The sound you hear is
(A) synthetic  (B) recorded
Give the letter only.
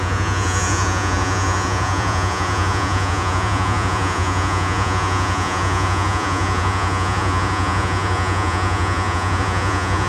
A